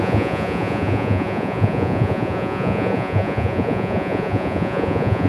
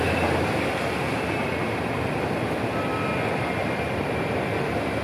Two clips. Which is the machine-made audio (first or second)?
first